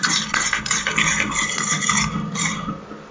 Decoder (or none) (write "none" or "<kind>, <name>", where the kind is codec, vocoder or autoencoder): none